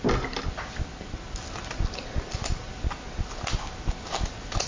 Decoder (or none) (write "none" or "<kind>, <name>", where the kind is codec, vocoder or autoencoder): none